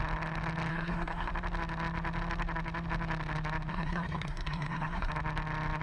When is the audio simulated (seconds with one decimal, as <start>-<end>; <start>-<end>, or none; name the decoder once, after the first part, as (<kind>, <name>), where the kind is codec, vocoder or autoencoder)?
0.7-1.3 (codec, SNAC); 3.7-5.1